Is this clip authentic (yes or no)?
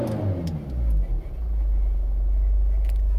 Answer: yes